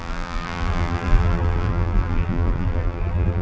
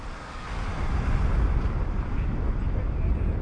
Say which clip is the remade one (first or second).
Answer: first